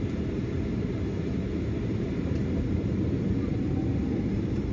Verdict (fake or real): fake